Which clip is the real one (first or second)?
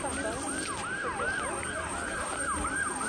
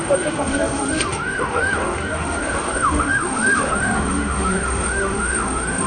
first